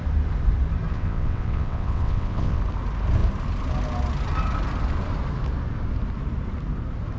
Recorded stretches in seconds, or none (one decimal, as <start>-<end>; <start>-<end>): 0.0-0.9; 2.6-7.2